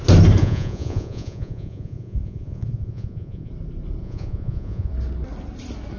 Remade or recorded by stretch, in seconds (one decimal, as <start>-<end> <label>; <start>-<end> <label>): 0.0-0.4 recorded; 0.4-3.5 remade; 3.5-4.0 recorded; 4.0-4.9 remade; 4.9-6.0 recorded